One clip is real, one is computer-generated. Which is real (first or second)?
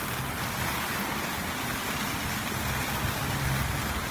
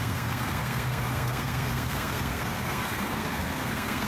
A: first